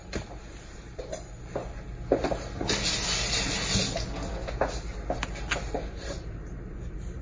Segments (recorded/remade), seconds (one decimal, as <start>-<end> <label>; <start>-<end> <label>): 0.0-1.6 remade; 1.6-5.9 recorded; 5.9-7.2 remade